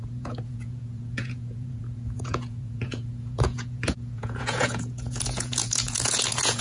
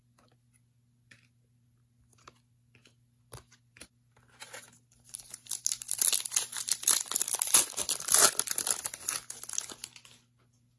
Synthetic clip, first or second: first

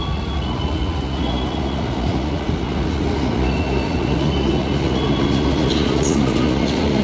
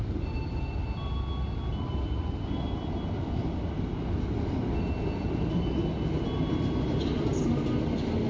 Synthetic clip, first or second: first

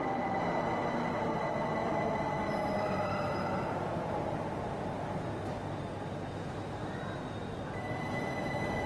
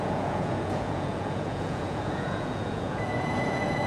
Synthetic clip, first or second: second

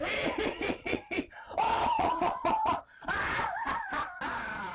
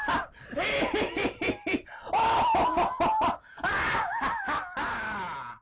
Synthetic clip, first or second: first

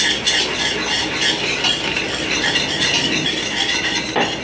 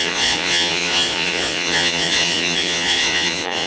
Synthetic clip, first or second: second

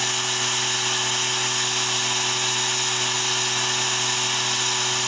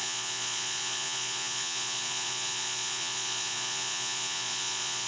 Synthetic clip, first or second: second